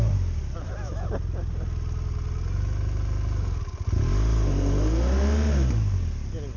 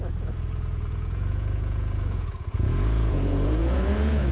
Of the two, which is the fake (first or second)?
second